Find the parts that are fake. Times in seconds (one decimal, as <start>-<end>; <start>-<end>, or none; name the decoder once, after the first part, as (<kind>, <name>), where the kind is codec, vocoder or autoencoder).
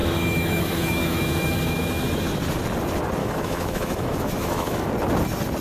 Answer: 0.0-2.2 (autoencoder, DAC-VAE); 3.2-4.9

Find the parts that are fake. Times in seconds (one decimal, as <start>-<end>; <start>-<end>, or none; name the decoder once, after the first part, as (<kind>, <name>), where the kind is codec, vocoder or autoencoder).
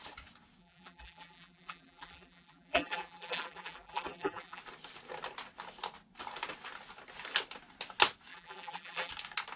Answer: 0.6-4.6 (vocoder, BigVGAN v2); 8.3-9.1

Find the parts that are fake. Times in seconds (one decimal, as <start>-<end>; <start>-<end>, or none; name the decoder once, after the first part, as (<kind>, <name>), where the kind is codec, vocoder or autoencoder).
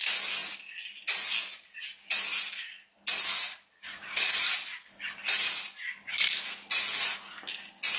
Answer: none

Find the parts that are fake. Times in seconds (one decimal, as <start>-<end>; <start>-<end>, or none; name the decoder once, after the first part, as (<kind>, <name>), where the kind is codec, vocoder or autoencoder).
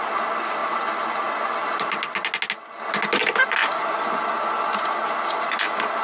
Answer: none